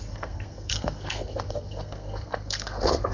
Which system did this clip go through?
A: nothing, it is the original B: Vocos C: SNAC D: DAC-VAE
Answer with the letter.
C